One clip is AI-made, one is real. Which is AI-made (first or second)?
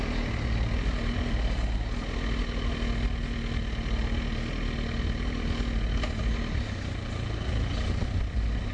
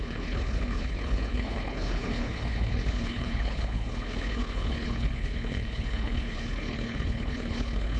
second